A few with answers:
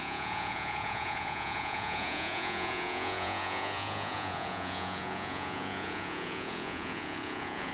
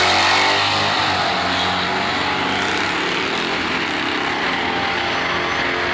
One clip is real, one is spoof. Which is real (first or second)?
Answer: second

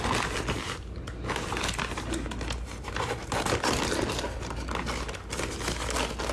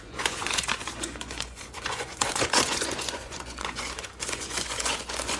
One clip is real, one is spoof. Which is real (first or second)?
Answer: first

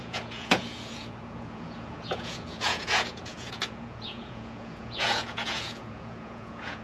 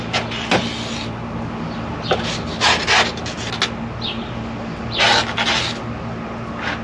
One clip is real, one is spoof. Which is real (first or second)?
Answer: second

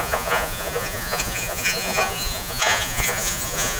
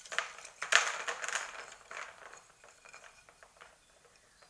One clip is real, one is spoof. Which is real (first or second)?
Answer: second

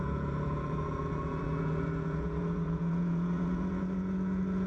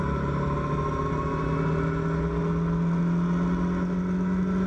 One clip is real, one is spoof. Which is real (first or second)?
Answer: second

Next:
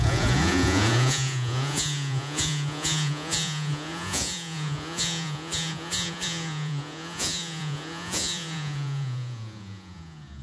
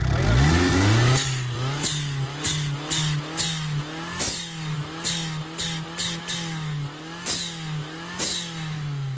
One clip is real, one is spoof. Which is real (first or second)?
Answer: second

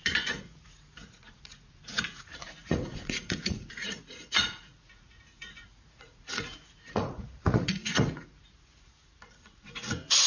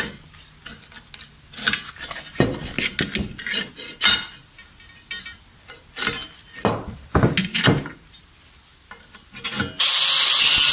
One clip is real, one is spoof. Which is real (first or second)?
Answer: second